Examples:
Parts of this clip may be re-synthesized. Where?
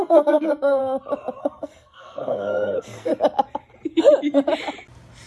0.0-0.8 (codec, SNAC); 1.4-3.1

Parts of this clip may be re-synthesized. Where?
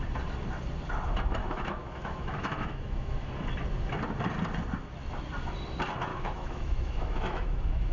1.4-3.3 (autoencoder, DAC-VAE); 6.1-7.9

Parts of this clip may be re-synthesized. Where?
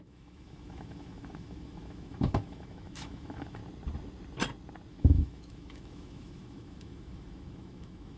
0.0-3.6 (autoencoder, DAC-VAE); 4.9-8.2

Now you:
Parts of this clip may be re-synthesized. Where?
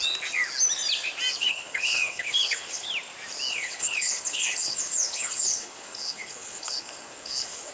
1.4-2.9 (codec, HILCodec); 3.5-7.7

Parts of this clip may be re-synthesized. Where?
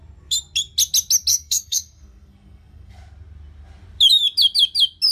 1.3-2.9 (codec, SNAC)